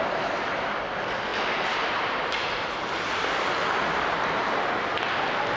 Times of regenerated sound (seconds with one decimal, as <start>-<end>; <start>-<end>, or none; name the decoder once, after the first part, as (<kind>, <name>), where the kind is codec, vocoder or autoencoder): 1.3-4.7 (vocoder, BigVGAN v2)